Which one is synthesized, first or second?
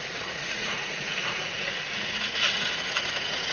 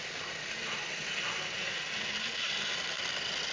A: first